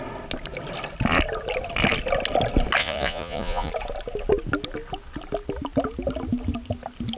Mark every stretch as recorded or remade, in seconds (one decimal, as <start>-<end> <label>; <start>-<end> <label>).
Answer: 0.0-2.8 recorded; 2.8-3.7 remade; 3.7-7.2 recorded